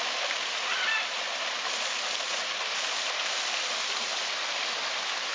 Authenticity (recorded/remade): recorded